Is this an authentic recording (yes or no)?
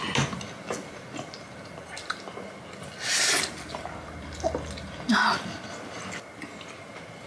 yes